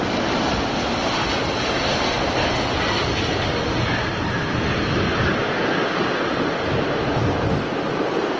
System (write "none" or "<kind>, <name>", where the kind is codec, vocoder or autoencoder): none